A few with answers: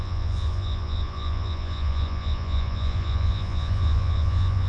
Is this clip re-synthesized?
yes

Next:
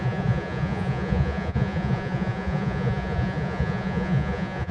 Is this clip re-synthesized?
yes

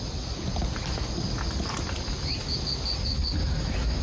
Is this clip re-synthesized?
no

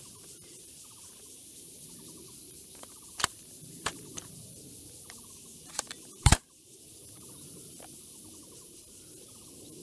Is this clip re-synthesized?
yes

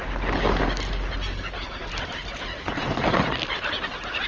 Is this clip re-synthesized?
no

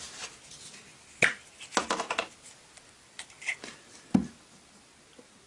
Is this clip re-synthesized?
no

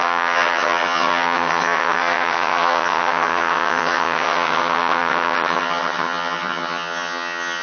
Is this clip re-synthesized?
yes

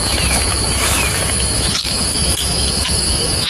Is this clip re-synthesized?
yes